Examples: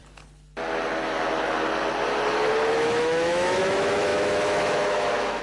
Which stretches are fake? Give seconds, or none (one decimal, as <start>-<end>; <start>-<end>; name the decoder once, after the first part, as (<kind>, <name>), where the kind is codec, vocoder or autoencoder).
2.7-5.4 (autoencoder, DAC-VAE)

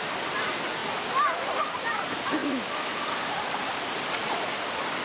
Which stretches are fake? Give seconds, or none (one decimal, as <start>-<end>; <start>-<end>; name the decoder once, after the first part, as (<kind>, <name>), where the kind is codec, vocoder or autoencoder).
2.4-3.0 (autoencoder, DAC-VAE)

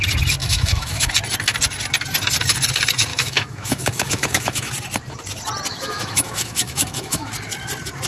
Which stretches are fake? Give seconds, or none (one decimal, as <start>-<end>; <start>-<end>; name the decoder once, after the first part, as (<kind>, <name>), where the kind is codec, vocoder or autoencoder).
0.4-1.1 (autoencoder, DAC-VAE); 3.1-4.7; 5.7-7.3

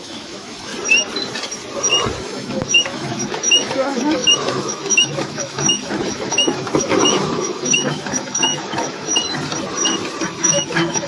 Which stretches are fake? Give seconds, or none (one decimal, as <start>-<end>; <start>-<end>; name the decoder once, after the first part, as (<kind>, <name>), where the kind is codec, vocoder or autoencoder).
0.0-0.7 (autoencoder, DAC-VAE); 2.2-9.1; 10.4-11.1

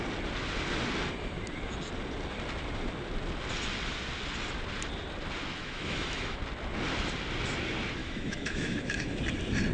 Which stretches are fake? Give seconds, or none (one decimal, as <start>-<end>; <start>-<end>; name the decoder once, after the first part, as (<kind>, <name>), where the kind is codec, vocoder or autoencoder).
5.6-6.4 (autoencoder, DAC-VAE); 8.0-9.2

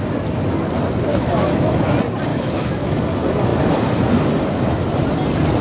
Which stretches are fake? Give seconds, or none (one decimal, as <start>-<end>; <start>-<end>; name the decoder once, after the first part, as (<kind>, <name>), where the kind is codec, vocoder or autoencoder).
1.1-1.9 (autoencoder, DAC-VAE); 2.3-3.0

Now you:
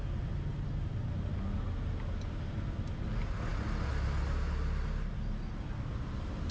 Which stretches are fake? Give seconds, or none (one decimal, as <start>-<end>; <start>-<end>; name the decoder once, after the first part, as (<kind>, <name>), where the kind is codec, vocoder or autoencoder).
none

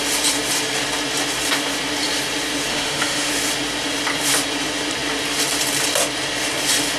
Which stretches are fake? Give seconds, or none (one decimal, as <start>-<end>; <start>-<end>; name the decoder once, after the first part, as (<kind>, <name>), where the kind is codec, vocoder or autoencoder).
2.7-3.3 (autoencoder, DAC-VAE)